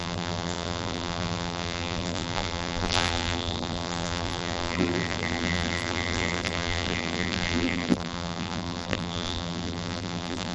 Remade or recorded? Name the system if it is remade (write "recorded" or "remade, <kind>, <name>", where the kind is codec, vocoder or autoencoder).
remade, vocoder, BigVGAN v2